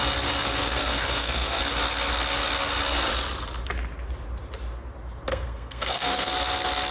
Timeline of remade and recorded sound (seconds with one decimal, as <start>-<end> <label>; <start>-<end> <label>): 0.0-0.6 recorded; 0.6-1.6 remade; 1.6-5.3 recorded; 5.3-6.3 remade; 6.3-6.9 recorded